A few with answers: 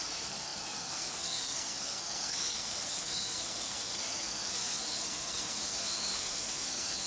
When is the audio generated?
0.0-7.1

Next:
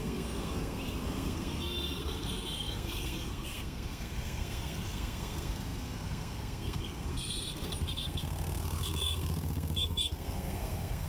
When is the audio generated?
0.0-11.1

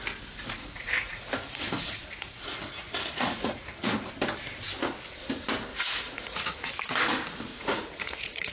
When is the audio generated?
0.6-4.1; 5.7-6.7; 7.5-8.5

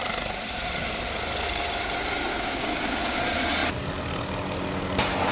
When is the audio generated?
2.3-3.2

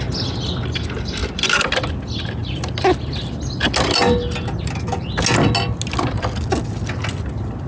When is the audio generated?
none

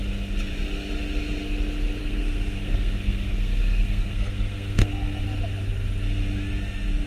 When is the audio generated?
2.0-5.2